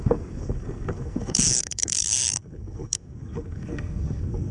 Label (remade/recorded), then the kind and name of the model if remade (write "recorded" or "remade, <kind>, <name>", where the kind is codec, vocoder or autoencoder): remade, codec, SNAC